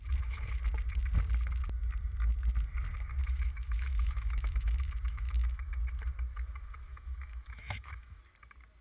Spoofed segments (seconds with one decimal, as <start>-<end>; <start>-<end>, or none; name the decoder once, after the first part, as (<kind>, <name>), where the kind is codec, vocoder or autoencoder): 3.2-5.7 (autoencoder, DAC-VAE); 6.9-8.2